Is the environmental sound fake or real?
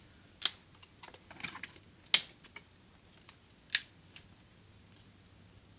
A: real